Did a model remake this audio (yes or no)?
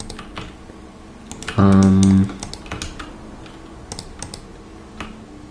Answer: no